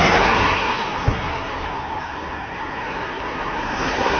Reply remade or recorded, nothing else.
remade